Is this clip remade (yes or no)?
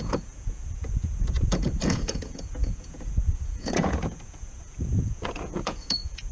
yes